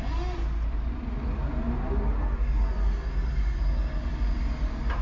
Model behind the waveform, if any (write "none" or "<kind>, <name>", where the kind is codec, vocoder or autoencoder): none